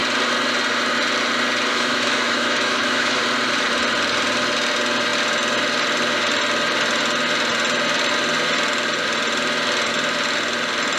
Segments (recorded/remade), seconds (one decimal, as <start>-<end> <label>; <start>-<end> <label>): 0.0-1.7 recorded; 1.7-3.2 remade; 3.2-11.0 recorded